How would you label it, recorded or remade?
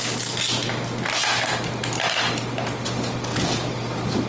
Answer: recorded